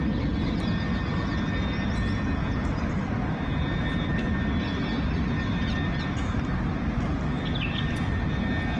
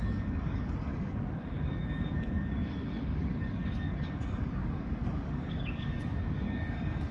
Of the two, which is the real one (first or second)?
first